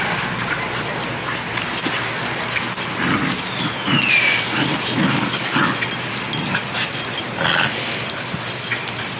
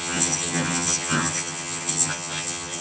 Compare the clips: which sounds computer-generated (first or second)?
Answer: second